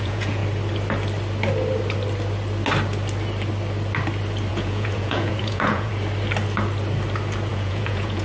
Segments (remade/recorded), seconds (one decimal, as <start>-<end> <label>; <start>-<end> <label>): 0.0-0.4 remade; 0.4-4.5 recorded; 4.5-5.9 remade; 5.9-7.5 recorded; 7.5-8.2 remade